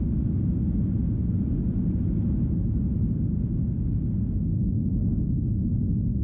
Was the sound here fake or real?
real